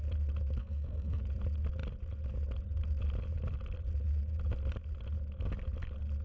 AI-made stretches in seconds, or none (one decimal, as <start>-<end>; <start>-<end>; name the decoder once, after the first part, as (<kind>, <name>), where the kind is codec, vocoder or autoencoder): 0.6-1.2 (codec, SNAC)